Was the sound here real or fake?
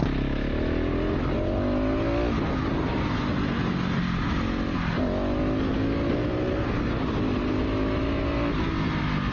real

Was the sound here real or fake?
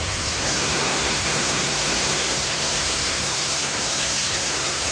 fake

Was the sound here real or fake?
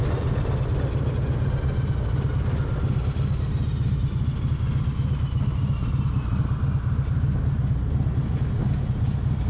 real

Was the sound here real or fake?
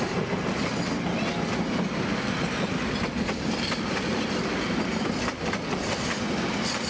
real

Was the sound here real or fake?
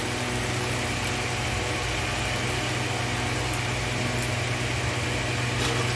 real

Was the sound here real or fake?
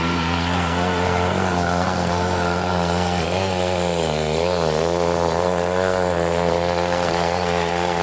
fake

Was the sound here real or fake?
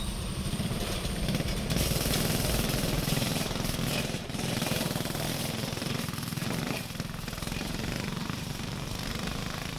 fake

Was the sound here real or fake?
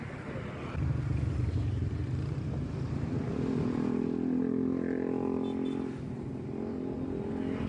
real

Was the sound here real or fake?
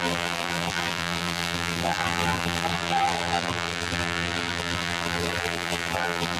fake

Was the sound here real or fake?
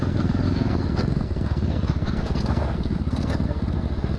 fake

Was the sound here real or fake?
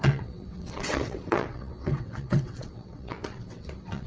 fake